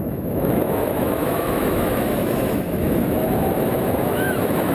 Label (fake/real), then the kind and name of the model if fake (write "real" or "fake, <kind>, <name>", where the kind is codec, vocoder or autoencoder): fake, autoencoder, DAC-VAE